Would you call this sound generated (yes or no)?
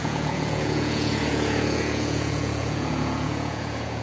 yes